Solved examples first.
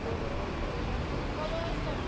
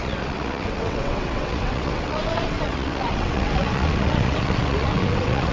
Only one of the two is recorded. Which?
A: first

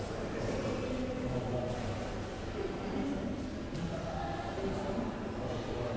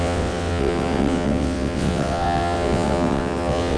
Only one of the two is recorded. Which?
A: first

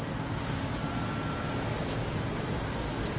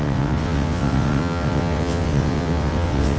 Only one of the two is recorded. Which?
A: first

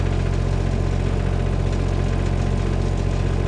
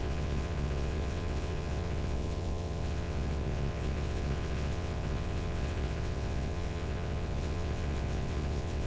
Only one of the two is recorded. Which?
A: first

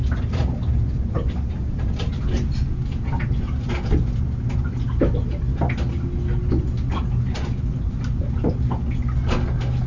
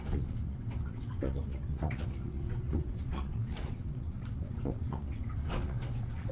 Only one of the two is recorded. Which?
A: first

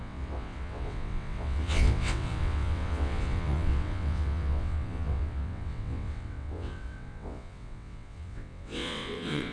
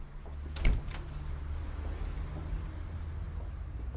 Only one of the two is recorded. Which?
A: second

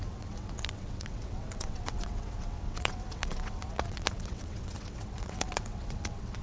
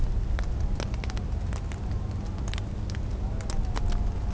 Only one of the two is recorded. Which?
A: second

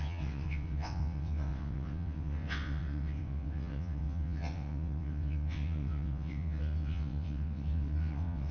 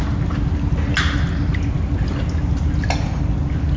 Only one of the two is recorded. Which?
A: second